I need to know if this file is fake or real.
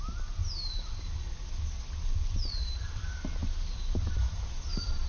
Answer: real